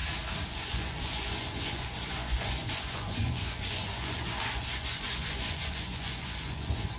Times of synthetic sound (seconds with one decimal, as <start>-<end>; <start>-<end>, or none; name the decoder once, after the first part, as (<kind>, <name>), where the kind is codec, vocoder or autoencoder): 0.5-7.0 (vocoder, Vocos)